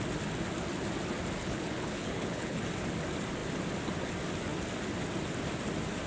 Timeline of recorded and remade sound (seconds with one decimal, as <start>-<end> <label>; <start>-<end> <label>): 0.0-1.4 recorded; 1.4-2.6 remade; 2.6-6.1 recorded